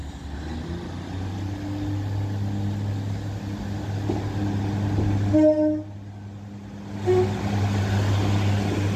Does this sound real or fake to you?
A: real